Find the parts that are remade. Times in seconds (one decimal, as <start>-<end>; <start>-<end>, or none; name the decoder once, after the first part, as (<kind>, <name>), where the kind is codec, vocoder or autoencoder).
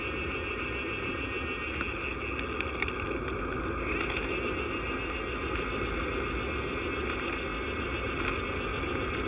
none